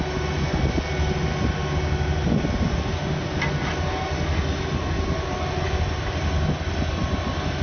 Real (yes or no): yes